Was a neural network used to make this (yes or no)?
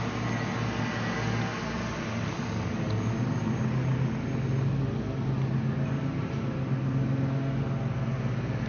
no